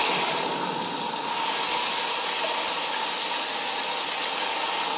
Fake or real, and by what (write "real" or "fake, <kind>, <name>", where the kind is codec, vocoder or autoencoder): real